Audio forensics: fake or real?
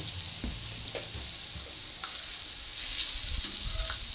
real